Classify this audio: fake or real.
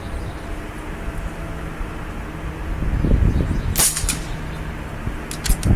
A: real